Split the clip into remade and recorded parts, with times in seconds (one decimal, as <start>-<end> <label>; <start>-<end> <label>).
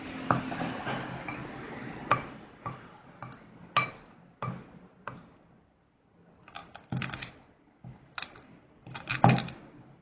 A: 0.0-10.0 recorded